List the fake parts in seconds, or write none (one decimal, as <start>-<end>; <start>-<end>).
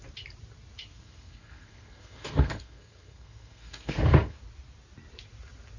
0.9-4.4